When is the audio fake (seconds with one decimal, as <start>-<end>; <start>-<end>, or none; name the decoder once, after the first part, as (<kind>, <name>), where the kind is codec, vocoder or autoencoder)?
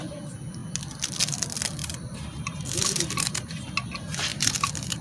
1.8-3.7 (vocoder, BigVGAN v2); 4.3-5.0